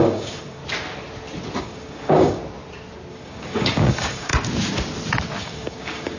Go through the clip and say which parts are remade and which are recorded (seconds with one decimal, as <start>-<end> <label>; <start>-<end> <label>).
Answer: 0.0-0.6 remade; 0.6-1.6 recorded; 1.6-2.4 remade; 2.4-3.1 recorded; 3.1-4.3 remade; 4.3-5.4 recorded; 5.4-6.2 remade